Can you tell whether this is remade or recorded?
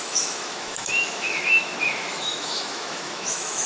remade